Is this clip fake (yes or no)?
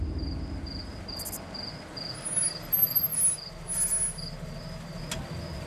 no